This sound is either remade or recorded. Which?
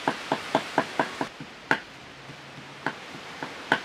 recorded